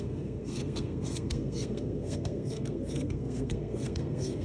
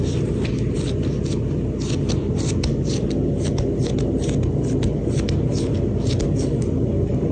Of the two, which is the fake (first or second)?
first